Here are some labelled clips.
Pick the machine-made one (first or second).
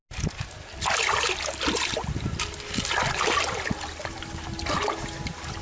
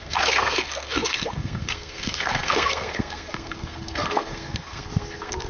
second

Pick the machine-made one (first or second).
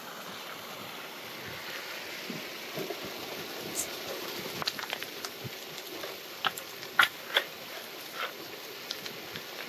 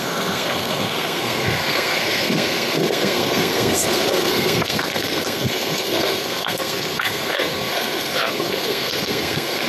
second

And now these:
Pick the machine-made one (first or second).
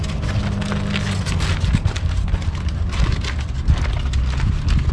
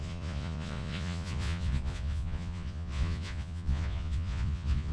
second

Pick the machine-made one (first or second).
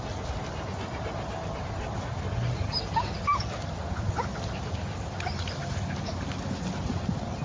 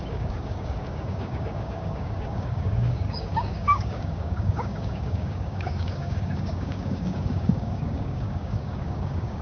second